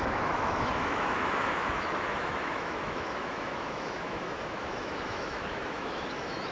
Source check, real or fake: fake